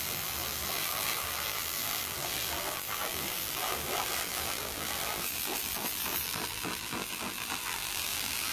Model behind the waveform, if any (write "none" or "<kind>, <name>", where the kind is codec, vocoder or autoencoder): vocoder, BigVGAN v2